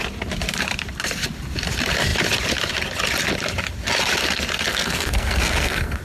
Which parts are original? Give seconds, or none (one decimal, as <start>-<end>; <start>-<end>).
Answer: 0.0-4.7